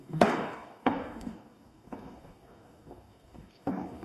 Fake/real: fake